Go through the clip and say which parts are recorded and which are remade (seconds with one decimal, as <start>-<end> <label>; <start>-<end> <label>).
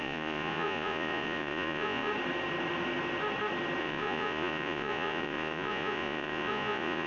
0.0-2.1 remade; 2.1-3.8 recorded; 3.8-7.1 remade